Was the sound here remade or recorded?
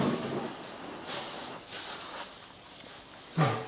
recorded